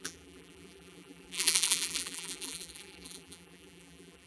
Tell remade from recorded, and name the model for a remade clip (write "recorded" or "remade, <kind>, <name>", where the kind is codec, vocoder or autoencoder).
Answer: remade, vocoder, BigVGAN v2